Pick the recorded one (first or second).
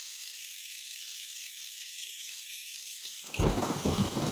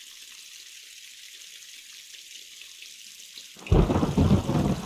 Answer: second